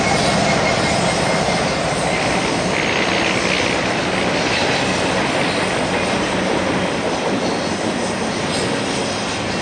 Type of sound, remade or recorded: recorded